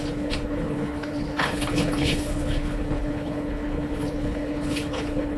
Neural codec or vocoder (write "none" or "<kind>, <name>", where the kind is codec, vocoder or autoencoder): codec, HILCodec